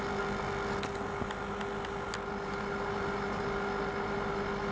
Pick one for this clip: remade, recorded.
recorded